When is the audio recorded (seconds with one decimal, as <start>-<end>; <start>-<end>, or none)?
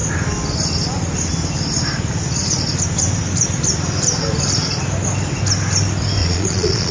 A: 0.0-6.2